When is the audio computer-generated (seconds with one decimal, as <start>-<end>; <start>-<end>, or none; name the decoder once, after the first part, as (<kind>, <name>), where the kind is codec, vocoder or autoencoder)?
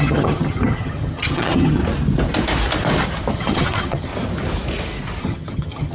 0.0-1.8 (vocoder, HiFi-GAN); 3.3-4.1; 5.2-5.9